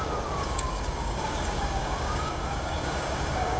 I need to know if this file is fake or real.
fake